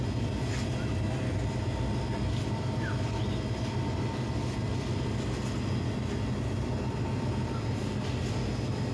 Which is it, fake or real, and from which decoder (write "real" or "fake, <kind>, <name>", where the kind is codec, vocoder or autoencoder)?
real